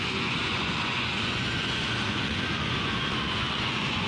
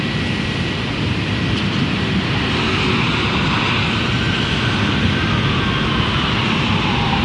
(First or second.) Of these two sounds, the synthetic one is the first